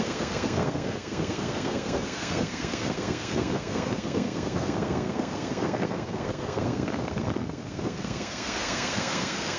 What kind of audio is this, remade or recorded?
remade